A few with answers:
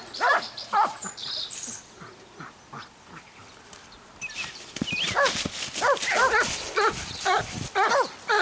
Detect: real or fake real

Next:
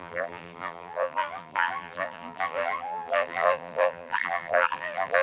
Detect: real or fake fake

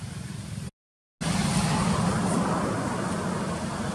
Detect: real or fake real